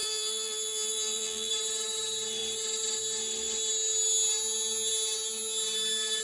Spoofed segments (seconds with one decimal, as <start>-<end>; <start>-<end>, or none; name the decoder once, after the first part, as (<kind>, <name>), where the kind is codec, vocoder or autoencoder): 0.0-1.5 (vocoder, BigVGAN v2)